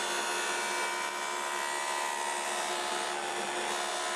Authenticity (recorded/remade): recorded